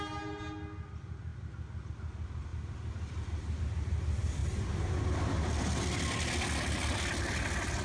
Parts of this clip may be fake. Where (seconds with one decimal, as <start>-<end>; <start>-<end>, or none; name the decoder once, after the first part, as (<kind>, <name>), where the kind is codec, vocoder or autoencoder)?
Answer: 2.5-3.6 (vocoder, BigVGAN v2)